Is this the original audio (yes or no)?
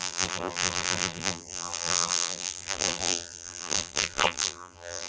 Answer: no